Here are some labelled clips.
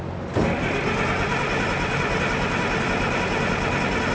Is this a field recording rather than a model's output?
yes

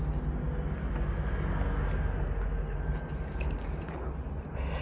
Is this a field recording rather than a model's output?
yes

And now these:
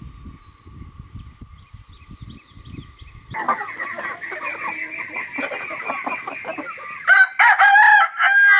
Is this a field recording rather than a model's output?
yes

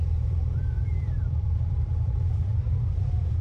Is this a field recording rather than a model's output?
no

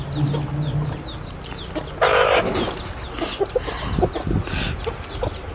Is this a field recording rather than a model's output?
yes